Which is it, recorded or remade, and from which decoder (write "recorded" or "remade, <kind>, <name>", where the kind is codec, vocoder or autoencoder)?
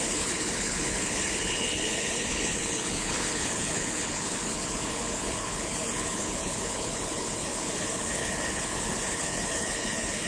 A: remade, codec, HILCodec